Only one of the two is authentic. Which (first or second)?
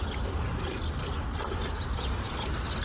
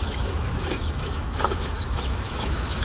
first